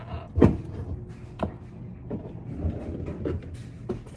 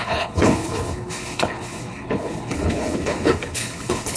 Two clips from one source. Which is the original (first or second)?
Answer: first